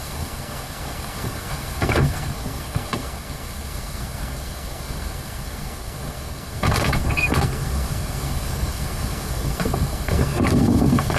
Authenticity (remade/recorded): remade